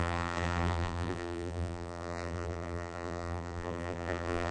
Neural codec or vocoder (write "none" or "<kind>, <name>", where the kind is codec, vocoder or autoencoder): vocoder, BigVGAN v2